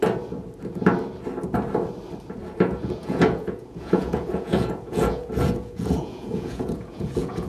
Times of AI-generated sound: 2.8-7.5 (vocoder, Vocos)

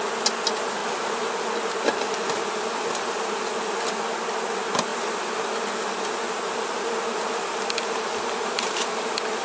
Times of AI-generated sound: none

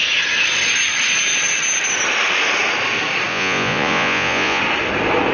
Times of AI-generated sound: 3.3-4.6 (vocoder, Vocos)